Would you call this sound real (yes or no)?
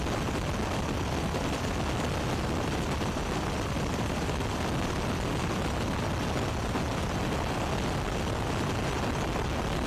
yes